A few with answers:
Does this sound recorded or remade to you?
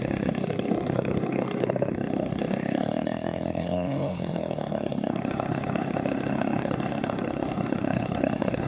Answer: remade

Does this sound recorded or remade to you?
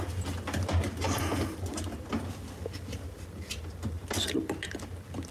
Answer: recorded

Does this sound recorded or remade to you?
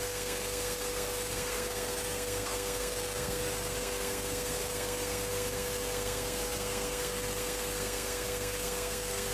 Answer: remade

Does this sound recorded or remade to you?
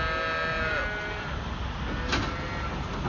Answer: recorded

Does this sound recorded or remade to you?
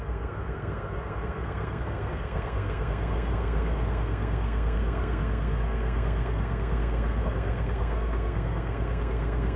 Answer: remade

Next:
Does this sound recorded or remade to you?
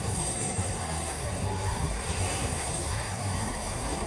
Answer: remade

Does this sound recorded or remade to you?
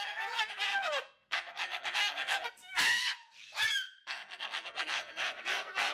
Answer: remade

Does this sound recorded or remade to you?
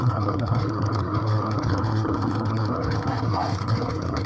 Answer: remade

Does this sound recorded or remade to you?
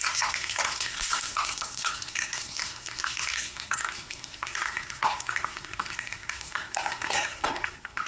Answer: remade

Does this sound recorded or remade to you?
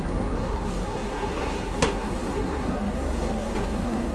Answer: remade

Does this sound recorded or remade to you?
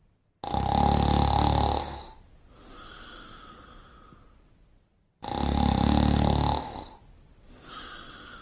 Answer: recorded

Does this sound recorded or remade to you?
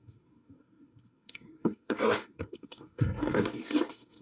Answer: remade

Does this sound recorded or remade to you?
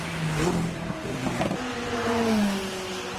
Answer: recorded